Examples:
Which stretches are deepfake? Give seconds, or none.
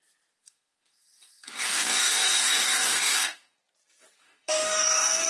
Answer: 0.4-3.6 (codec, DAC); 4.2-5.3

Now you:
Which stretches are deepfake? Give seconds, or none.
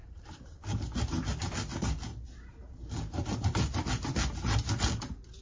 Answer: 0.0-0.6 (vocoder, BigVGAN v2)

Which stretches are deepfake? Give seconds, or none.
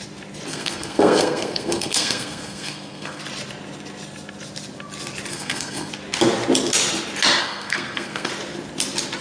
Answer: 0.5-3.2 (codec, SNAC); 5.3-5.9; 7.4-8.3